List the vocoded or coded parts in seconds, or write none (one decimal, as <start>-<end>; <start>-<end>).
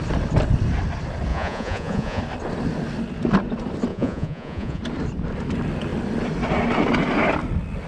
1.3-2.2; 3.9-4.8